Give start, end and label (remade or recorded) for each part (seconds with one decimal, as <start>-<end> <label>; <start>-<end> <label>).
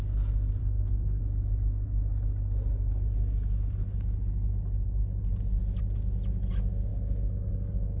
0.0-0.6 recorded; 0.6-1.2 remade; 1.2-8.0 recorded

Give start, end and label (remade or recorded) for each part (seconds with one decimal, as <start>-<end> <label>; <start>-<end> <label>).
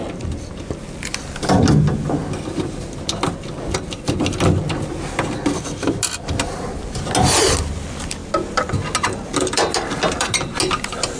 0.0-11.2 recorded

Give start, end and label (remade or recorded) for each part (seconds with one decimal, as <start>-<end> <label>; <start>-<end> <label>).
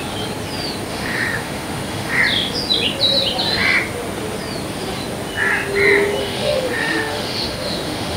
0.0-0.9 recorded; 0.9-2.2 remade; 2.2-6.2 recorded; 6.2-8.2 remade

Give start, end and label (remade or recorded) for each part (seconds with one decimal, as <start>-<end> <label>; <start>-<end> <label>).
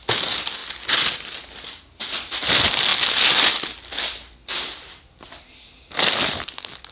0.0-6.9 recorded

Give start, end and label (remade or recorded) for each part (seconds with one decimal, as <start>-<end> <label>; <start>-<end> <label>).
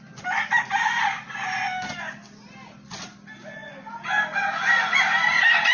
0.0-5.7 recorded